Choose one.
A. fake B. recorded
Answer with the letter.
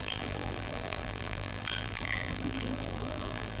A